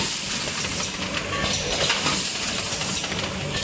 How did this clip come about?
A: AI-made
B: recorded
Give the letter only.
B